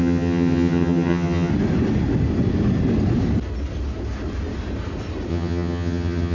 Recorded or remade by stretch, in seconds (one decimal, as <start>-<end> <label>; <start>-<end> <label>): 0.0-1.5 remade; 1.5-5.3 recorded; 5.3-6.3 remade